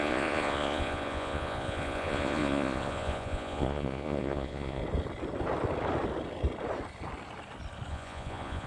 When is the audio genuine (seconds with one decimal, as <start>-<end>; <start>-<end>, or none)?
4.8-7.9